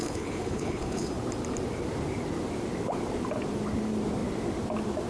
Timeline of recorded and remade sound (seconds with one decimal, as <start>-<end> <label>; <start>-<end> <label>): 0.0-1.1 remade; 1.1-5.1 recorded